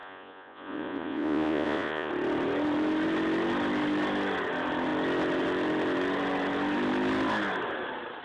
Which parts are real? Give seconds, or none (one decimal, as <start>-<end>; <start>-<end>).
2.1-8.2